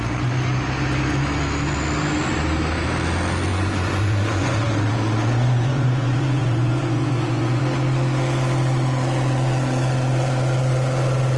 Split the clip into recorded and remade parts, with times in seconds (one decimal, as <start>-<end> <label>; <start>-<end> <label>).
0.0-3.5 recorded; 3.5-7.6 remade; 7.6-11.4 recorded